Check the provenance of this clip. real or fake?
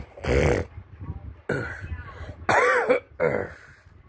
real